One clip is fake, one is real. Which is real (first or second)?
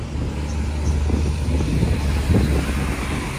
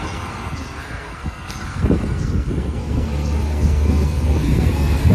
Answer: first